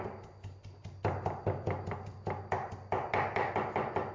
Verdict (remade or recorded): recorded